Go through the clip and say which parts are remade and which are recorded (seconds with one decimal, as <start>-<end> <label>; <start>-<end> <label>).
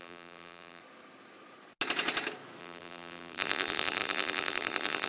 0.0-0.8 remade; 0.8-2.6 recorded; 2.6-5.1 remade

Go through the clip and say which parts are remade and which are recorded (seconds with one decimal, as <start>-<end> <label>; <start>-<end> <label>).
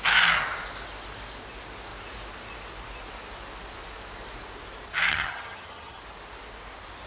0.0-5.1 recorded; 5.1-6.0 remade; 6.0-7.1 recorded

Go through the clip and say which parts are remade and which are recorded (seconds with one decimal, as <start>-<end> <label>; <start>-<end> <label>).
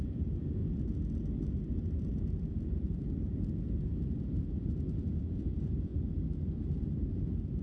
0.0-0.6 remade; 0.6-5.2 recorded; 5.2-5.9 remade; 5.9-7.1 recorded; 7.1-7.6 remade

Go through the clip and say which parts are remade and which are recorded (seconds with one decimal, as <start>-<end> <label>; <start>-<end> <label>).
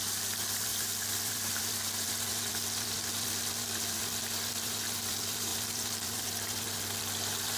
0.0-7.6 remade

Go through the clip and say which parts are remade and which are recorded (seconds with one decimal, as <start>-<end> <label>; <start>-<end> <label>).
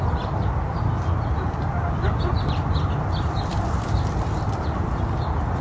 0.0-5.6 remade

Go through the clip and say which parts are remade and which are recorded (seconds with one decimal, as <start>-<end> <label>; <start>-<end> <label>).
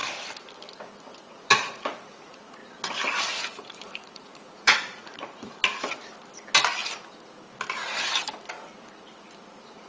0.0-1.3 recorded; 1.3-2.6 remade; 2.6-3.6 recorded; 3.6-5.6 remade; 5.6-9.4 recorded; 9.4-9.9 remade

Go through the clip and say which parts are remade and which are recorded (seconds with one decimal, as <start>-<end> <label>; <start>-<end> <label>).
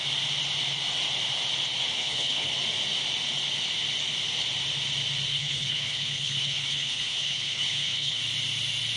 0.0-2.0 recorded; 2.0-2.5 remade; 2.5-5.3 recorded; 5.3-8.2 remade; 8.2-9.0 recorded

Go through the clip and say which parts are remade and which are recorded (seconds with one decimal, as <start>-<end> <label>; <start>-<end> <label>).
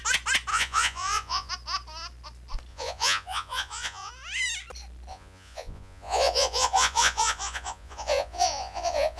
0.0-0.5 recorded; 0.5-1.5 remade; 1.5-2.7 recorded; 2.7-4.1 remade; 4.1-5.1 recorded; 5.1-9.2 remade